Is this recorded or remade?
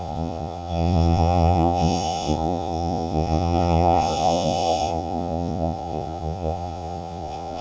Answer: remade